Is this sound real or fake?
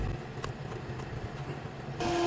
real